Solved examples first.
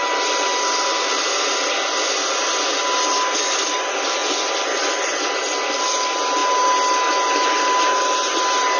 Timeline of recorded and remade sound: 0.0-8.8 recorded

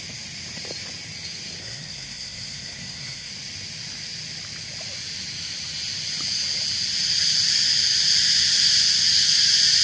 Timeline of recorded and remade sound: 0.0-1.6 recorded; 1.6-3.3 remade; 3.3-9.8 recorded